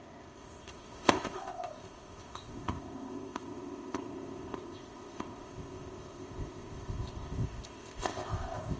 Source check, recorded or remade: remade